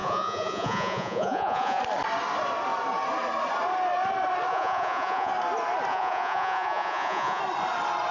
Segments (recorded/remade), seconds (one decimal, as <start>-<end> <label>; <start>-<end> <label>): 0.0-1.8 remade; 1.8-4.5 recorded; 4.5-5.3 remade; 5.3-5.9 recorded; 5.9-7.4 remade; 7.4-8.1 recorded